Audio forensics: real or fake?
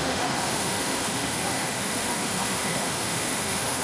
fake